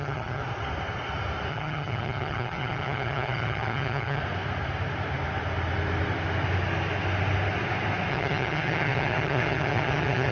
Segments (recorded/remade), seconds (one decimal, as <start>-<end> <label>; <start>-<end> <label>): 0.0-0.4 remade; 0.4-1.5 recorded; 1.5-4.2 remade; 4.2-8.1 recorded; 8.1-10.3 remade